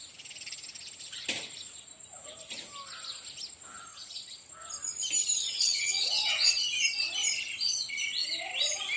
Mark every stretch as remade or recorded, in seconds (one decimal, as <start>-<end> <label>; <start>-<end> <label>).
0.0-3.9 recorded; 3.9-4.5 remade; 4.5-5.4 recorded; 5.4-6.5 remade; 6.5-9.0 recorded